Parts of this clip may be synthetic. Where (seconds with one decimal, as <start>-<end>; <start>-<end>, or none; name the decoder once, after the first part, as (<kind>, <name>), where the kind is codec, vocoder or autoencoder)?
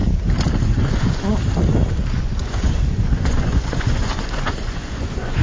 0.6-1.3 (vocoder, Vocos); 2.2-5.4